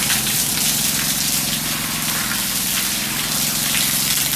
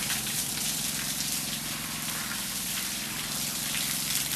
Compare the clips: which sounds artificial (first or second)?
second